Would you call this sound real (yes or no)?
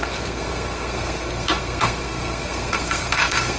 no